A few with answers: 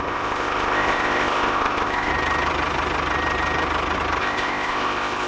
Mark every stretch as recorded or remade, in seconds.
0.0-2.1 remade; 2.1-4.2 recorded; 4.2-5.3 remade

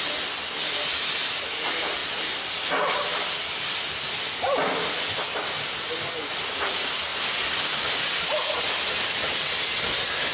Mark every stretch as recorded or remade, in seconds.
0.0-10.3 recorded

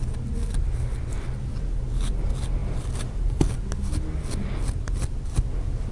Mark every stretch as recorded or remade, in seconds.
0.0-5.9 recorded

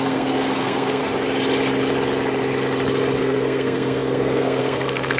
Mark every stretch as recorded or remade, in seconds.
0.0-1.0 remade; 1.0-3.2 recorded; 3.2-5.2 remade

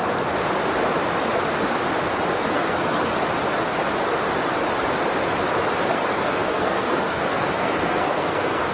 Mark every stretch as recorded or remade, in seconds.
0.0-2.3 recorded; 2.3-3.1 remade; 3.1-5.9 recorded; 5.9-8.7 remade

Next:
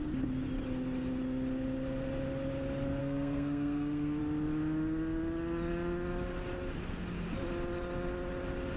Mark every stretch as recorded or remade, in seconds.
0.0-3.0 recorded; 3.0-4.2 remade; 4.2-8.8 recorded

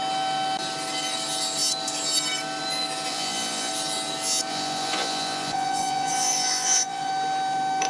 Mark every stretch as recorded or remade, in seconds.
0.0-3.1 recorded; 3.1-3.7 remade; 3.7-4.5 recorded; 4.5-7.1 remade; 7.1-7.9 recorded

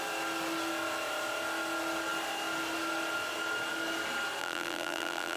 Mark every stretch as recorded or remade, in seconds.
0.0-4.4 recorded; 4.4-5.4 remade